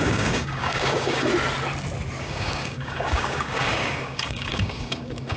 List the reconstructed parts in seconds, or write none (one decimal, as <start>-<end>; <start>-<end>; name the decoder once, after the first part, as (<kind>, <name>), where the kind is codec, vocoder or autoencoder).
0.0-1.3 (codec, DAC); 2.2-5.4